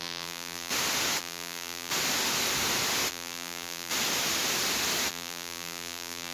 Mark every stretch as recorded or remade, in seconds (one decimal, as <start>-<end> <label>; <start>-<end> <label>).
0.0-0.7 remade; 0.7-1.2 recorded; 1.2-1.9 remade; 1.9-3.1 recorded; 3.1-3.9 remade; 3.9-5.1 recorded; 5.1-6.3 remade